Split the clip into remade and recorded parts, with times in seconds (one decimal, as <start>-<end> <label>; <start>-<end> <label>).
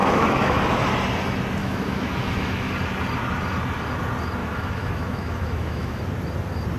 0.0-0.6 remade; 0.6-1.6 recorded; 1.6-2.7 remade; 2.7-4.4 recorded; 4.4-6.0 remade; 6.0-6.8 recorded